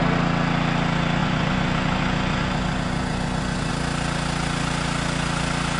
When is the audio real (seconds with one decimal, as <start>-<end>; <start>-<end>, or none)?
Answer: 0.0-1.2; 3.7-5.8